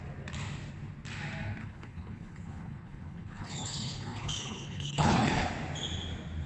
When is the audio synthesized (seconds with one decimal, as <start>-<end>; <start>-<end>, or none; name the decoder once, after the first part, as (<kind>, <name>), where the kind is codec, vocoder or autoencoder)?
1.6-5.5 (codec, HILCodec)